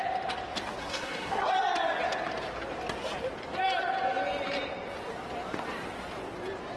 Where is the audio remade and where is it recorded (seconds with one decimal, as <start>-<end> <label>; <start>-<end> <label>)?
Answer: 0.0-0.8 recorded; 0.8-1.5 remade; 1.5-6.8 recorded